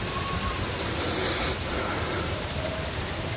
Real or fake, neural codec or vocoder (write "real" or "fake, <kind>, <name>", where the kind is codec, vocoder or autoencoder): fake, vocoder, BigVGAN v2